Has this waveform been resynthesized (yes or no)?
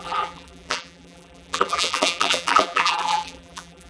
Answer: yes